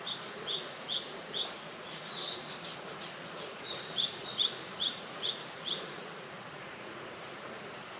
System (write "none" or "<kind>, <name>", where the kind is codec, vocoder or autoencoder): vocoder, Vocos